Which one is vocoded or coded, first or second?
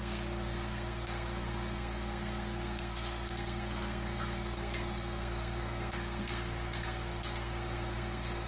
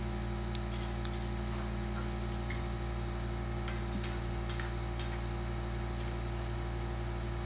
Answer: first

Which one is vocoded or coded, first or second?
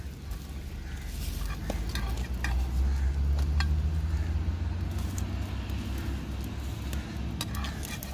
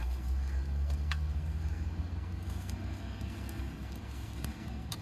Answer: second